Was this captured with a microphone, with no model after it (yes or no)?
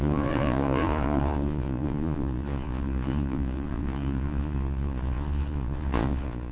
no